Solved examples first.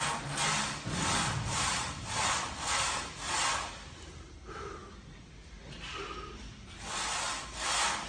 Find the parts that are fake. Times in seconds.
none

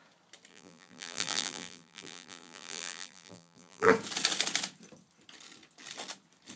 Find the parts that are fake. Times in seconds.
0.5-3.9 (vocoder, BigVGAN v2)

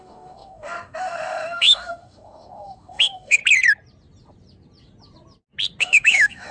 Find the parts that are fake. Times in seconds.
0.0-3.4 (autoencoder, DAC-VAE); 5.8-6.5